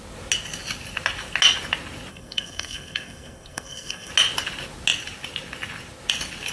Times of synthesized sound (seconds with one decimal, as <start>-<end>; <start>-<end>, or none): 2.1-4.1